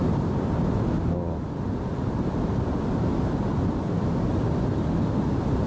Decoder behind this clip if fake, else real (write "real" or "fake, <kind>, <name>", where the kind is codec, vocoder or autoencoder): real